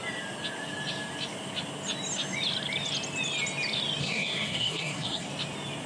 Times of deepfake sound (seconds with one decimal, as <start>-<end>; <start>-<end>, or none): 4.0-5.3

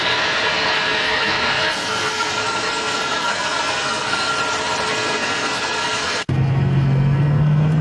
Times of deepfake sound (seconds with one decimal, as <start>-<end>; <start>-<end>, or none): 0.0-4.3; 4.9-7.8

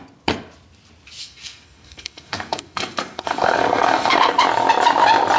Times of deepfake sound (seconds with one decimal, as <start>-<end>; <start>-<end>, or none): 1.2-4.4

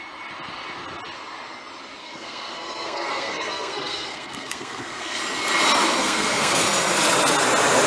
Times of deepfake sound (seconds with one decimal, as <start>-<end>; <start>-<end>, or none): 2.0-5.2; 6.0-6.6